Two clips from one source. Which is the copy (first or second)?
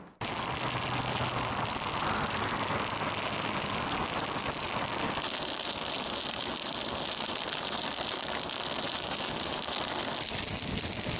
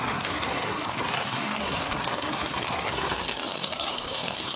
second